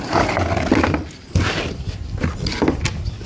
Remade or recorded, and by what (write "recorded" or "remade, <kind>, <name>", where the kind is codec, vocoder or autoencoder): recorded